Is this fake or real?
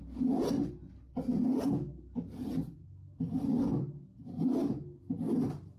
real